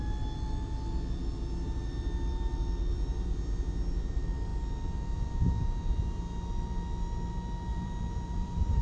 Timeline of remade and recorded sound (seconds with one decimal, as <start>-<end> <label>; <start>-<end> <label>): 0.0-7.7 recorded; 7.7-8.8 remade